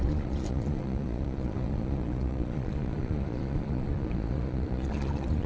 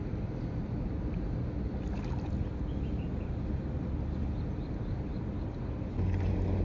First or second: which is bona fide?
second